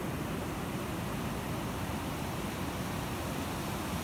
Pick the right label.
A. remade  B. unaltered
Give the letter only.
B